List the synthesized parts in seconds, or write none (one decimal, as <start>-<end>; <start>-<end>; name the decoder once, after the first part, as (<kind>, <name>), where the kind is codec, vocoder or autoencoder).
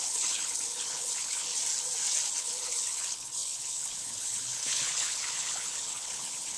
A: 0.0-1.5 (codec, HILCodec); 2.4-6.6